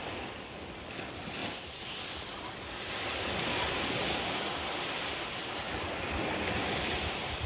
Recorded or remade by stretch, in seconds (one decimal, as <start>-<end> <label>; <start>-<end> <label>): 0.0-7.5 recorded